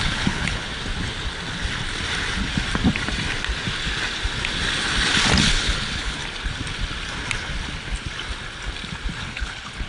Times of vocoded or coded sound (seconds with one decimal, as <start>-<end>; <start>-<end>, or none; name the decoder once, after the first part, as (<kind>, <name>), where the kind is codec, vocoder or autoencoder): 0.0-0.7 (codec, HILCodec); 5.5-6.2; 9.2-9.9

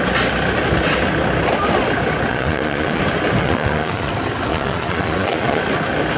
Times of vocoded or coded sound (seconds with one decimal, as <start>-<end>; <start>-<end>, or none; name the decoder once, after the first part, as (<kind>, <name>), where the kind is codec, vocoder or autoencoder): 2.3-3.0 (vocoder, Vocos); 3.4-4.1; 4.5-5.6